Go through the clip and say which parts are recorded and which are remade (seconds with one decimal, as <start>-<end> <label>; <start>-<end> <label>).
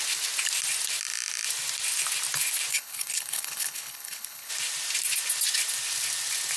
0.0-2.7 recorded; 2.7-4.5 remade; 4.5-6.6 recorded